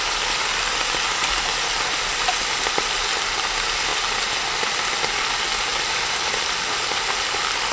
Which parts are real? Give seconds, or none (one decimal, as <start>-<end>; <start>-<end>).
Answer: 0.0-5.7; 6.7-7.7